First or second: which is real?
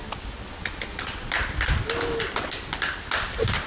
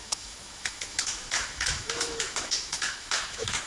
first